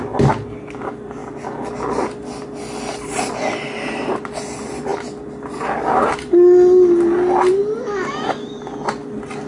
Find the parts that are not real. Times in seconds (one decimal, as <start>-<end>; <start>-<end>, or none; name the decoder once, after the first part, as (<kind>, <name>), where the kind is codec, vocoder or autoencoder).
none